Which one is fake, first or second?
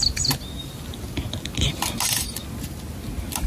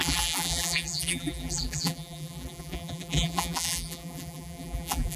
second